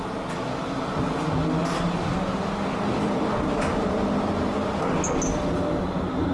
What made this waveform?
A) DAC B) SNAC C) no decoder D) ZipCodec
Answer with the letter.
C